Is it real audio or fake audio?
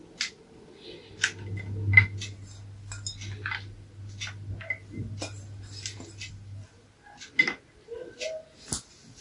real